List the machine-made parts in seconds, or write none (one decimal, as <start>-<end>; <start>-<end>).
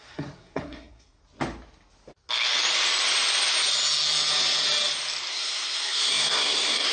0.0-1.2; 5.3-6.9